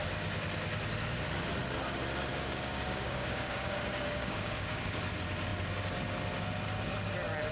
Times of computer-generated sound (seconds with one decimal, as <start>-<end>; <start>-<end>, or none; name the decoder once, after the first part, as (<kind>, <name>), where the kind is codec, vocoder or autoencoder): 2.3-5.0 (codec, DAC)